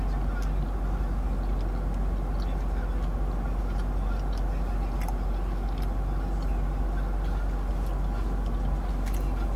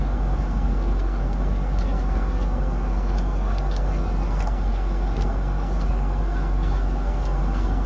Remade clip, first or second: second